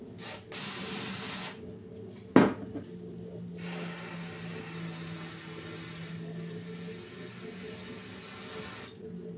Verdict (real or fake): real